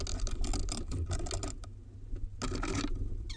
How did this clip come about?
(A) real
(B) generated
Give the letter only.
A